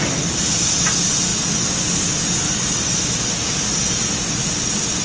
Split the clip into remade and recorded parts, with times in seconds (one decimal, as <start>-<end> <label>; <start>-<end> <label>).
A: 0.0-5.0 recorded